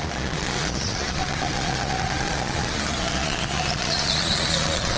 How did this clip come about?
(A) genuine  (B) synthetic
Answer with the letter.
B